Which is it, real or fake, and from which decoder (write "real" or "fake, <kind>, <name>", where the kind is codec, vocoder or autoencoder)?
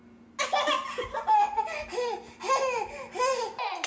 real